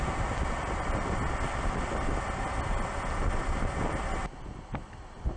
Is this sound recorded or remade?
recorded